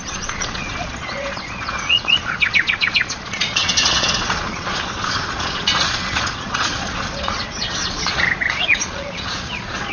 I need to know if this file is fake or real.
fake